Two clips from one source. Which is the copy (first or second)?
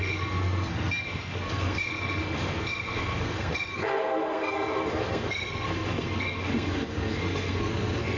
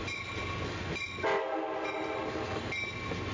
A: first